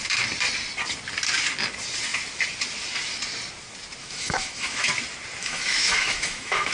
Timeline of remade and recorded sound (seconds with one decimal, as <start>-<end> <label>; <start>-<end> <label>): 0.0-4.0 recorded; 4.0-4.9 remade; 4.9-5.4 recorded; 5.4-6.7 remade